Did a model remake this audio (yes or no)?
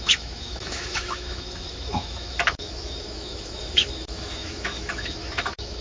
yes